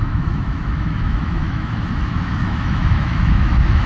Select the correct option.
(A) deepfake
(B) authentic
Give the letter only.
A